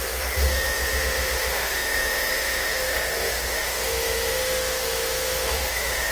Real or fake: fake